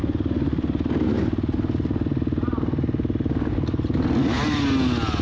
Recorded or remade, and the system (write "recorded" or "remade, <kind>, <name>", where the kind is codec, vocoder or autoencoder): recorded